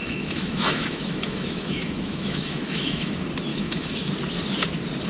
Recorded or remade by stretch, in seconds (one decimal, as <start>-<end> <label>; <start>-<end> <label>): 0.0-3.1 remade; 3.1-3.5 recorded; 3.5-4.1 remade; 4.1-5.1 recorded